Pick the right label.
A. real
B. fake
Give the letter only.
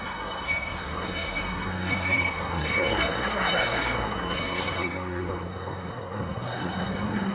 B